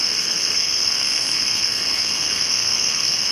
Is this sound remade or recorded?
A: remade